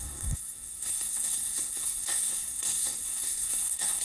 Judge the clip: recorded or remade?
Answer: remade